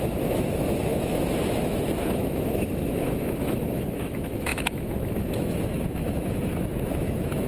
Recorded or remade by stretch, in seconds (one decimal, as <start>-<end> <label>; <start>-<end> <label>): 0.0-7.5 remade